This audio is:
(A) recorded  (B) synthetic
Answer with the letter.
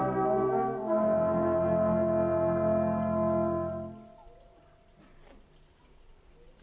A